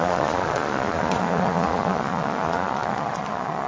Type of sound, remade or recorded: remade